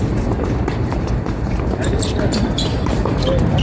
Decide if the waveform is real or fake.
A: fake